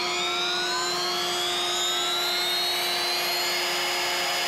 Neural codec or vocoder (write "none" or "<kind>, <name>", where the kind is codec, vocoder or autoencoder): none